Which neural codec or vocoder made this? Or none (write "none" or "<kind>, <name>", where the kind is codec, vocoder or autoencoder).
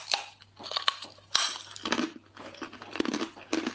none